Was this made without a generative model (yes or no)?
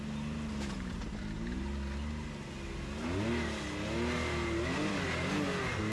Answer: yes